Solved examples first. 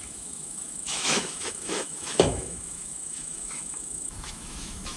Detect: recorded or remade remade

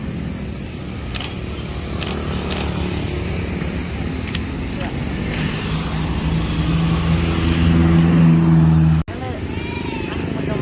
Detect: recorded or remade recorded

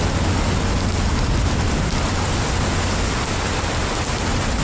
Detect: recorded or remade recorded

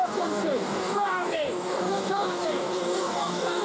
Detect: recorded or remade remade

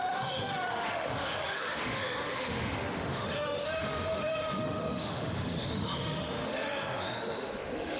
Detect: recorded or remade remade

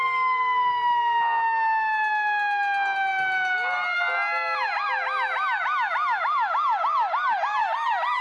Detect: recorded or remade recorded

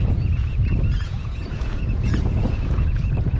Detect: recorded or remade remade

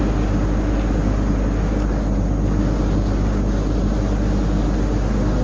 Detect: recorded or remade recorded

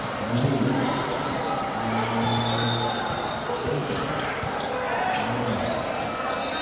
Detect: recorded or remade recorded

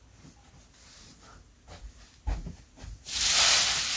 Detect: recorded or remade recorded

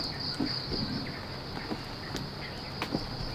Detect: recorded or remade recorded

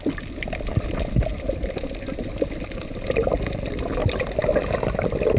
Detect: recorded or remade recorded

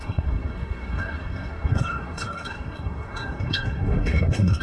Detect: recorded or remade remade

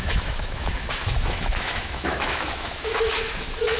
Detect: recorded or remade remade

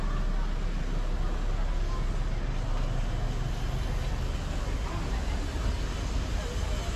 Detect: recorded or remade recorded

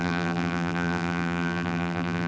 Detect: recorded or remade remade